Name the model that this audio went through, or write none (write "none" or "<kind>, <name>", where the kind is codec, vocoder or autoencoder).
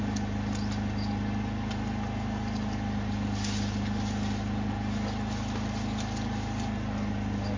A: none